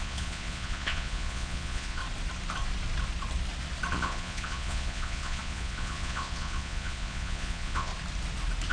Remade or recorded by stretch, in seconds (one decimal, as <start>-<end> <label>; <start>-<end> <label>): 0.0-2.0 remade; 2.0-3.9 recorded; 3.9-7.9 remade; 7.9-8.7 recorded